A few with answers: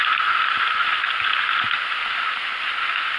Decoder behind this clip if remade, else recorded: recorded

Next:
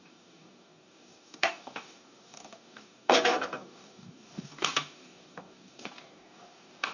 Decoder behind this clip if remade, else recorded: remade, codec, DAC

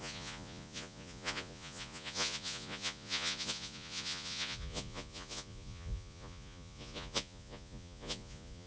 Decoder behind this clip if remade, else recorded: remade, vocoder, Vocos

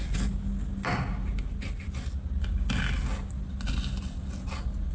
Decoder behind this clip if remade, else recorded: recorded